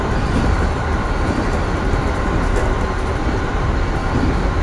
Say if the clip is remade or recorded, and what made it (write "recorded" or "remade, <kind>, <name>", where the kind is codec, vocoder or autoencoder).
recorded